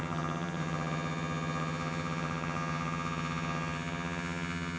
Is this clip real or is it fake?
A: fake